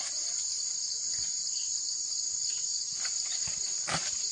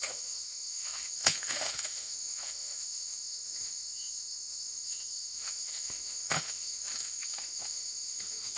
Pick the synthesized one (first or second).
second